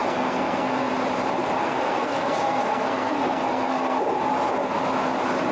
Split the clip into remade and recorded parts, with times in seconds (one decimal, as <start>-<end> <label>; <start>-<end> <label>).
0.0-0.9 remade; 0.9-1.6 recorded; 1.6-4.0 remade; 4.0-5.5 recorded